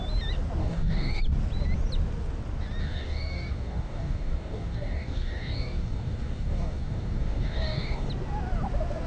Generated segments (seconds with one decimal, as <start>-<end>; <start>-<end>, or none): 0.6-1.2; 2.8-8.1